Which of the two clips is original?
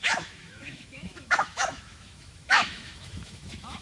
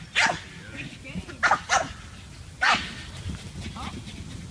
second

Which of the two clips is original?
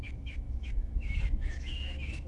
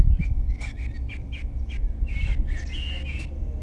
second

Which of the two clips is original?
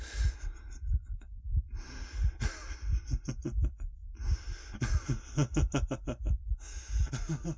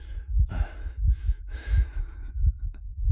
first